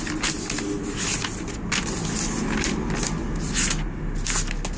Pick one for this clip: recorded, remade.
recorded